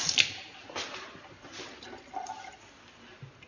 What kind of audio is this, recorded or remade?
recorded